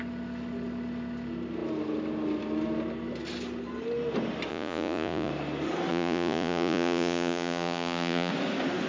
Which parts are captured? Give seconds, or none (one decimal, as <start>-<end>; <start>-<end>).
0.0-4.5; 5.3-5.9; 8.3-8.9